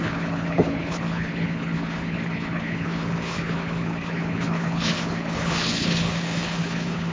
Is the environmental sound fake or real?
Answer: fake